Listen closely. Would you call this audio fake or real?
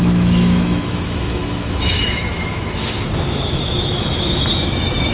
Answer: fake